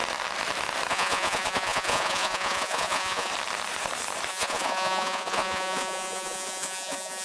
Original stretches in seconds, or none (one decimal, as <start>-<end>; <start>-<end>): 0.0-0.9; 3.3-4.3